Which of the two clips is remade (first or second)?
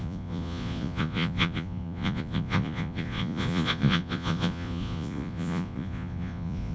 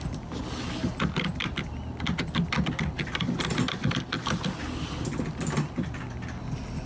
first